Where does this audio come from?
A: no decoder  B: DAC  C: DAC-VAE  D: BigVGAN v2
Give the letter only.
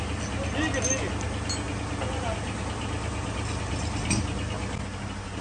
A